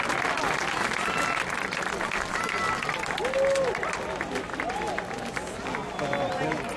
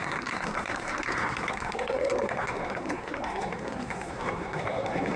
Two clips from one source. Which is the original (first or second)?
first